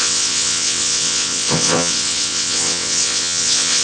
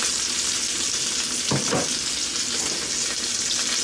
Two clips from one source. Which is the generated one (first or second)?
first